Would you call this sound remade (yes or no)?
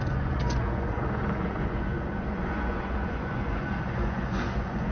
yes